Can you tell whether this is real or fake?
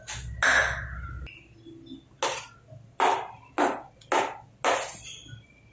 real